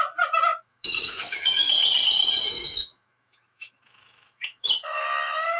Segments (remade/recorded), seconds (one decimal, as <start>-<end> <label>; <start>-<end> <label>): 0.0-0.5 recorded; 0.5-1.7 remade; 1.7-2.5 recorded; 2.5-5.6 remade